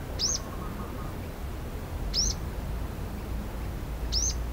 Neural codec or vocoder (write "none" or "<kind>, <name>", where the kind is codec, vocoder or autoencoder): none